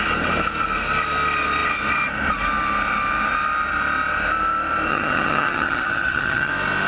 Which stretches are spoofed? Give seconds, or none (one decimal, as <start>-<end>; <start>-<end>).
4.9-6.5